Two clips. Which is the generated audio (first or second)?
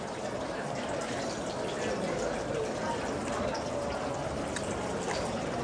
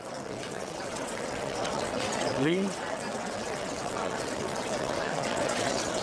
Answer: second